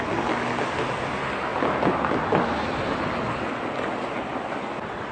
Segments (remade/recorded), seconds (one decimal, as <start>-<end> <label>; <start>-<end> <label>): 0.0-5.1 recorded